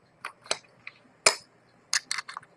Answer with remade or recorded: recorded